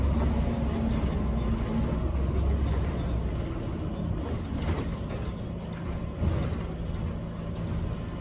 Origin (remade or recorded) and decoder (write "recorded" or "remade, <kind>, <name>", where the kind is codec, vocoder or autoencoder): recorded